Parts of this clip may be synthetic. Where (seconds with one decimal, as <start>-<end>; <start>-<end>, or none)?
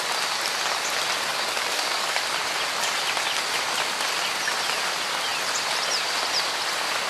1.3-2.2